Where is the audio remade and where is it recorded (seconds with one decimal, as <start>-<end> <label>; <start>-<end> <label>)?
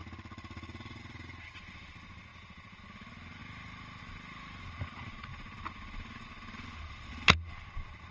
0.0-2.3 recorded; 2.3-2.8 remade; 2.8-8.1 recorded